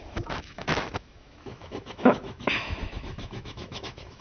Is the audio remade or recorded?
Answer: remade